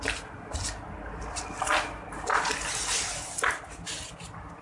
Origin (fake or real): real